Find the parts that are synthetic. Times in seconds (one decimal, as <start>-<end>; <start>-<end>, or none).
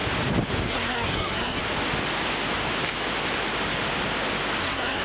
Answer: 0.7-1.6; 4.6-5.0